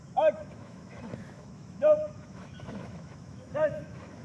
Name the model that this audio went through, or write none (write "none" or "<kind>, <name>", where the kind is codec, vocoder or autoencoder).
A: autoencoder, DAC-VAE